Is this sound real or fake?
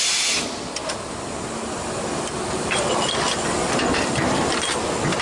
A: real